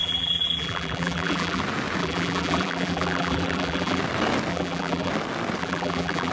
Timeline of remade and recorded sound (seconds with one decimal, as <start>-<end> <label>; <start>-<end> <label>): 0.0-1.6 remade; 1.6-2.0 recorded; 2.0-4.0 remade; 4.0-4.5 recorded; 4.5-5.1 remade; 5.1-5.6 recorded; 5.6-6.3 remade